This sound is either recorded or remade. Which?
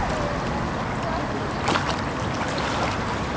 recorded